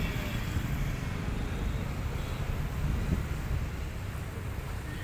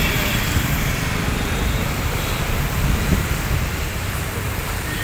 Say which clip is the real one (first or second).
first